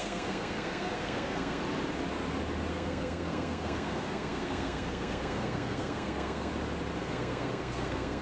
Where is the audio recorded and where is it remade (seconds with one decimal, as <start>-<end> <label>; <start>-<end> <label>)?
0.0-1.6 remade; 1.6-2.7 recorded; 2.7-6.5 remade; 6.5-7.0 recorded; 7.0-8.2 remade